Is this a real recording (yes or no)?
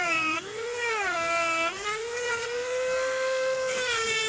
no